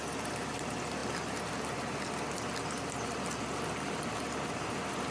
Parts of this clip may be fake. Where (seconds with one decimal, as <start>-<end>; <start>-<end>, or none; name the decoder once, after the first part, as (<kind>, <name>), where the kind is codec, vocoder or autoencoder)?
none